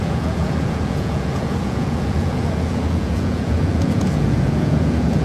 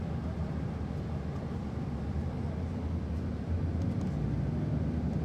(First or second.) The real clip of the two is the second